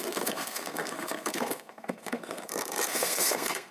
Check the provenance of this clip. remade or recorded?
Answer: remade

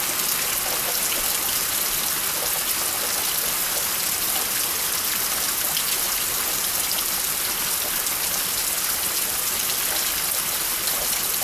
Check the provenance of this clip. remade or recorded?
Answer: recorded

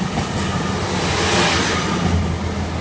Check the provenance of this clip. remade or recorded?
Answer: recorded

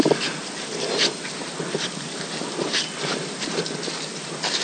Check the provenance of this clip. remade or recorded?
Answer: recorded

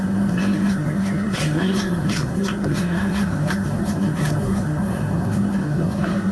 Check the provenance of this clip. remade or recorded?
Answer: remade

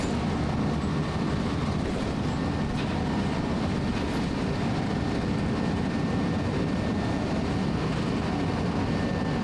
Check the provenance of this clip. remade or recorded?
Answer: recorded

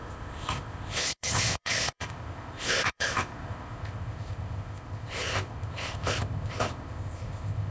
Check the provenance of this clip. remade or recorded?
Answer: remade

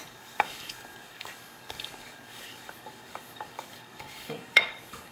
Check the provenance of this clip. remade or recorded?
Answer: remade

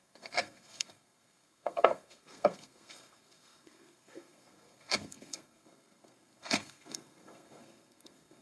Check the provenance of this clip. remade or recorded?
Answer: remade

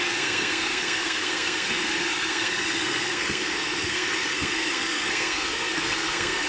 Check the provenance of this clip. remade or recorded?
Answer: remade